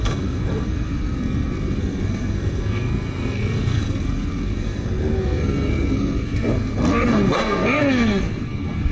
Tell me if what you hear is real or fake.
fake